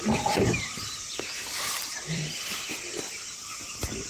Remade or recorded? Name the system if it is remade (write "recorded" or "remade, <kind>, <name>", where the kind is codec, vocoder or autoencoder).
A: remade, vocoder, BigVGAN v2